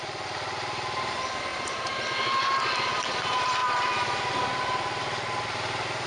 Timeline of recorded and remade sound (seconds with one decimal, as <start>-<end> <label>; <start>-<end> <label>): 0.0-1.5 recorded; 1.5-2.0 remade; 2.0-6.1 recorded

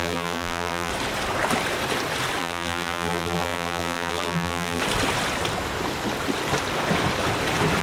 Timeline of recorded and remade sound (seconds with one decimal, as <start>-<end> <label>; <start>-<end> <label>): 0.0-0.9 remade; 0.9-2.4 recorded; 2.4-4.8 remade; 4.8-7.8 recorded

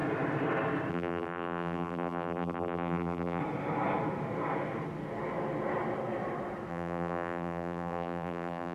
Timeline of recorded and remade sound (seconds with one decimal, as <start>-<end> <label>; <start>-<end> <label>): 0.0-0.9 recorded; 0.9-3.4 remade; 3.4-6.7 recorded; 6.7-8.7 remade

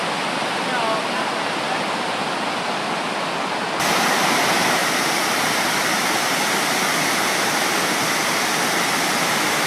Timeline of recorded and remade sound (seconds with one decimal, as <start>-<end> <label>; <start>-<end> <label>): 0.0-9.7 recorded

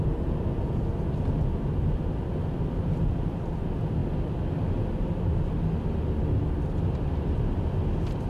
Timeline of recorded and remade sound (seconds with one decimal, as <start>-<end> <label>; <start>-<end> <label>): 0.0-8.3 recorded

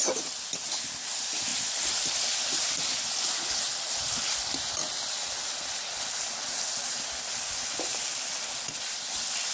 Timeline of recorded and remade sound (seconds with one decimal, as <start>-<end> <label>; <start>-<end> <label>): 0.0-9.5 recorded

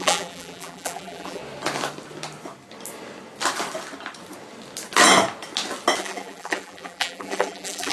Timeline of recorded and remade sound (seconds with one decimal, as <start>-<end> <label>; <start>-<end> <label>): 0.0-1.4 remade; 1.4-6.0 recorded; 6.0-7.9 remade

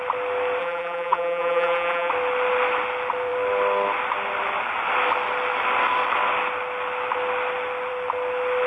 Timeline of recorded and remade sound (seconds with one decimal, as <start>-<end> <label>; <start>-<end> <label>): 0.0-0.6 recorded; 0.6-2.1 remade; 2.1-8.7 recorded